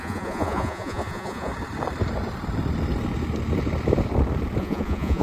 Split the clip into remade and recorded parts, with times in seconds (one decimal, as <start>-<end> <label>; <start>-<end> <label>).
0.0-1.5 remade; 1.5-4.6 recorded; 4.6-5.2 remade